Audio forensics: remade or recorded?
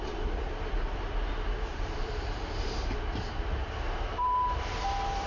remade